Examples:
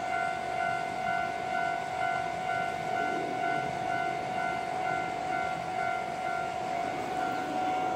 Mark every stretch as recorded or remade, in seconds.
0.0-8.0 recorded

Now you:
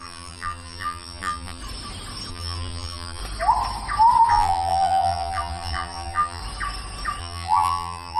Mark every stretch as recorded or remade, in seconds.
0.0-1.6 remade; 1.6-2.3 recorded; 2.3-3.2 remade; 3.2-4.3 recorded; 4.3-6.4 remade; 6.4-7.2 recorded; 7.2-8.2 remade

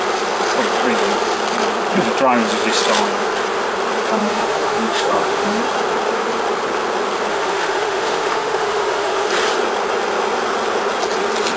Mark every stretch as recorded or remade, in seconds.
0.0-4.2 recorded; 4.2-5.6 remade; 5.6-7.3 recorded; 7.3-9.3 remade; 9.3-11.6 recorded

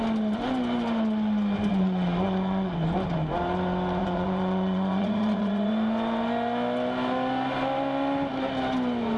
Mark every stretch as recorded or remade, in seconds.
0.0-1.7 recorded; 1.7-2.7 remade; 2.7-4.0 recorded; 4.0-5.7 remade; 5.7-9.2 recorded

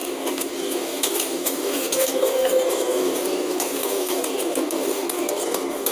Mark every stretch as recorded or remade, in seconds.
0.0-5.9 remade

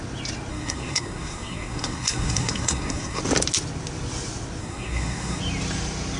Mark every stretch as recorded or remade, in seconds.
0.0-0.5 recorded; 0.5-3.2 remade; 3.2-4.6 recorded; 4.6-5.4 remade; 5.4-6.2 recorded